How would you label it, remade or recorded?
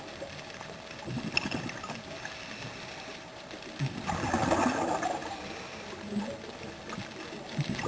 recorded